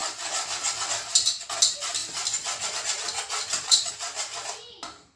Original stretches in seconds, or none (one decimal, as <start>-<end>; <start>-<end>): 0.0-2.0; 3.9-5.2